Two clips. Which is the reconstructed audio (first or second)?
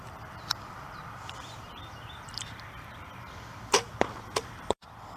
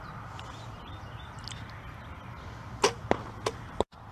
first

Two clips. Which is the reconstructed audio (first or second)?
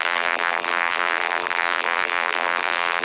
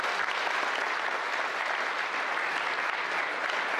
first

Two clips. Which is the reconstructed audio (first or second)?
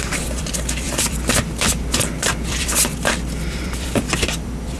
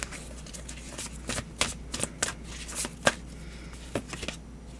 first